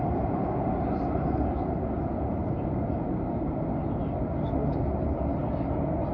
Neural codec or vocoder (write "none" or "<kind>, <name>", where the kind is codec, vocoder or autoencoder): none